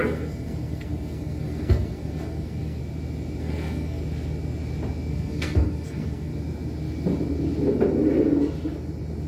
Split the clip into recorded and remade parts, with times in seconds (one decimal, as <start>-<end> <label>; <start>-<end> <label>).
0.0-2.8 remade; 2.8-3.4 recorded; 3.4-4.0 remade; 4.0-5.1 recorded; 5.1-6.3 remade; 6.3-9.3 recorded